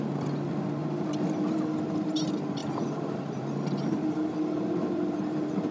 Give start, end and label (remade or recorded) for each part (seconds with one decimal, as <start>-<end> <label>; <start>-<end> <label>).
0.0-0.8 recorded; 0.8-1.6 remade; 1.6-2.6 recorded; 2.6-5.7 remade